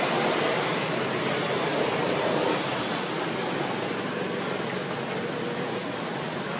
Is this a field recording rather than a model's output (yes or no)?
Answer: yes